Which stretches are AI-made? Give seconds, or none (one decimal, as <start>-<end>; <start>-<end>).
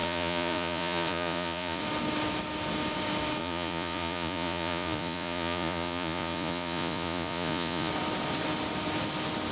0.0-1.8; 3.4-7.9